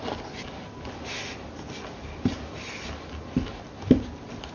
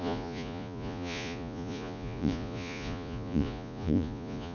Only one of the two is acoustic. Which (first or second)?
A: first